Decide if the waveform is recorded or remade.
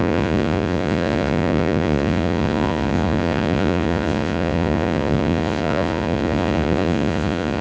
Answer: remade